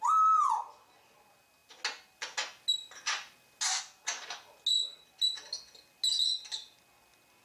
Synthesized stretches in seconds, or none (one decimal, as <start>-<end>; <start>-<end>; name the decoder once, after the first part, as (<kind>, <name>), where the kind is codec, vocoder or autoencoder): none